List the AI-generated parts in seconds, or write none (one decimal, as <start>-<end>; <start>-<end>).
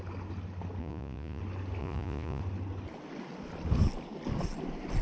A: 0.8-1.4; 1.8-2.4